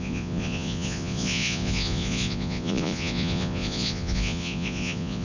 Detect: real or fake fake